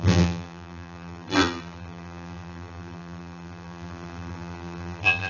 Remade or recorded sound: remade